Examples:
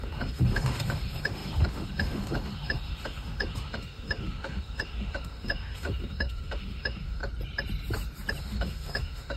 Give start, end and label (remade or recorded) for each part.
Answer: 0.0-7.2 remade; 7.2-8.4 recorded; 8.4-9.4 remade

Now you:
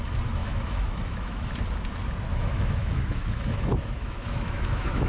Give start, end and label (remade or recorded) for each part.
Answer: 0.0-0.4 recorded; 0.4-1.6 remade; 1.6-2.3 recorded; 2.3-5.1 remade

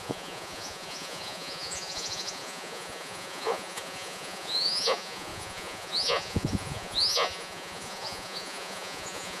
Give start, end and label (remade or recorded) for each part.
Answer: 0.0-9.4 remade

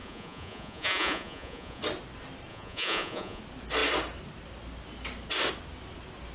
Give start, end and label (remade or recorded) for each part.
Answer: 0.0-1.8 remade; 1.8-2.5 recorded; 2.5-3.4 remade; 3.4-6.3 recorded

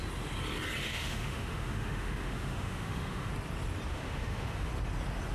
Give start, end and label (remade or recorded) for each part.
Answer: 0.0-0.8 recorded; 0.8-3.3 remade; 3.3-3.9 recorded; 3.9-4.7 remade; 4.7-5.3 recorded

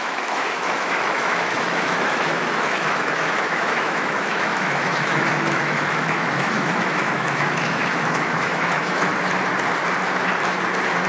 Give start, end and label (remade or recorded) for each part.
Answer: 0.0-9.1 remade; 9.1-11.1 recorded

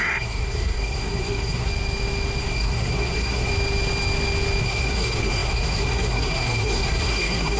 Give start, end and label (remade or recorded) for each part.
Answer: 0.0-1.7 remade; 1.7-2.4 recorded; 2.4-3.5 remade; 3.5-4.6 recorded; 4.6-7.6 remade

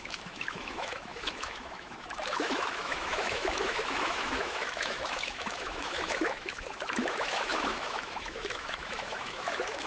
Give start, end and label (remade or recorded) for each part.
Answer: 0.0-9.9 remade